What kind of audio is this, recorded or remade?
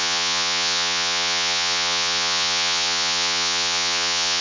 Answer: remade